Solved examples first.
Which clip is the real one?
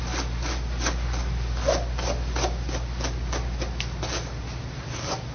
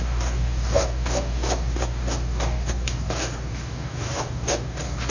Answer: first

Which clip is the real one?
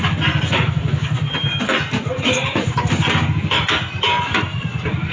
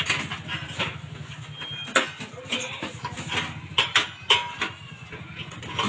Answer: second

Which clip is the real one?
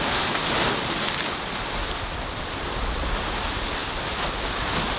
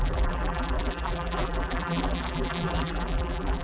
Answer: first